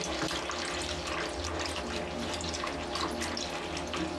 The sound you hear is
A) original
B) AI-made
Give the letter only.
A